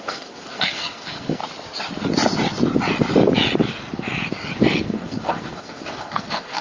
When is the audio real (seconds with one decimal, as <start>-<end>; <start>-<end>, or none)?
1.4-4.8